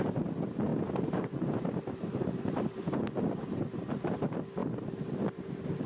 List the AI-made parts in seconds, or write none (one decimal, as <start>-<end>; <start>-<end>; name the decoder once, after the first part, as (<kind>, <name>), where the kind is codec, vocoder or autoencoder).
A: 0.0-4.6 (vocoder, BigVGAN v2); 5.2-5.9